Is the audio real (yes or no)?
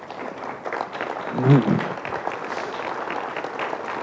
yes